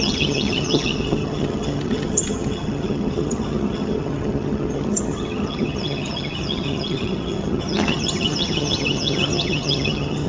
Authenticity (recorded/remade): remade